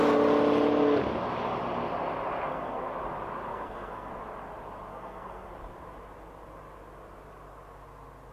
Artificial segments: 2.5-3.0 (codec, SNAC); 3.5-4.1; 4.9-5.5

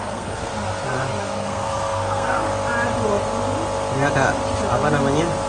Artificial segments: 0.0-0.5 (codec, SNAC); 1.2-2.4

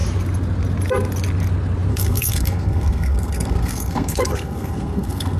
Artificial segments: 1.9-5.4 (codec, SNAC)

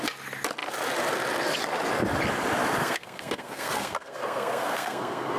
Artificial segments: 2.8-5.4 (codec, SNAC)